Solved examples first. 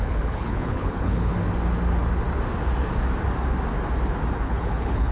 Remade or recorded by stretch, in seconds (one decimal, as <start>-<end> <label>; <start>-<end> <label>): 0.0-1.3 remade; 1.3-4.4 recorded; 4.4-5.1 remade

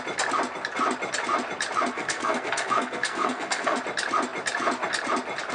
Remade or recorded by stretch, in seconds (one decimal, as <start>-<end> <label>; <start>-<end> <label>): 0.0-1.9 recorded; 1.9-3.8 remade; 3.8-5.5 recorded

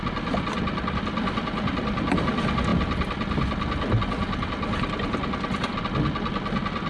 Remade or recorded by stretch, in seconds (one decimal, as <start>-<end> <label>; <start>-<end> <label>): 0.0-6.9 recorded

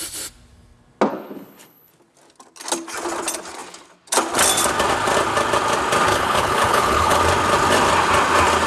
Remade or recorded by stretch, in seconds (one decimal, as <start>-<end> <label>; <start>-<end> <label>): 0.0-1.1 recorded; 1.1-1.9 remade; 1.9-6.1 recorded; 6.1-7.2 remade; 7.2-8.7 recorded

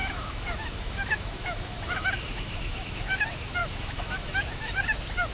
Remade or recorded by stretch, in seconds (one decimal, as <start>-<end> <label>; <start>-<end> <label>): 0.0-3.2 remade; 3.2-3.6 recorded; 3.6-4.8 remade; 4.8-5.3 recorded

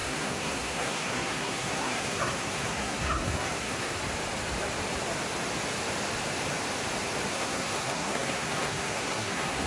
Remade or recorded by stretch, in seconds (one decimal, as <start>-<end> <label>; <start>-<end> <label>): 0.0-4.0 remade; 4.0-7.3 recorded; 7.3-9.7 remade

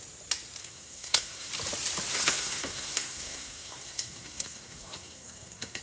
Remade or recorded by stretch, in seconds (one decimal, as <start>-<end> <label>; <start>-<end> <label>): 0.0-0.6 recorded; 0.6-1.5 remade; 1.5-2.1 recorded; 2.1-5.8 remade

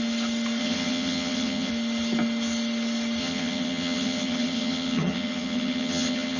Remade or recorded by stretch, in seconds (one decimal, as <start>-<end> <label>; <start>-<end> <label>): 0.0-0.6 recorded; 0.6-1.7 remade; 1.7-3.2 recorded; 3.2-6.4 remade